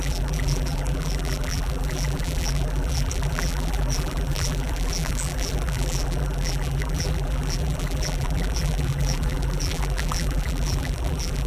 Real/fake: fake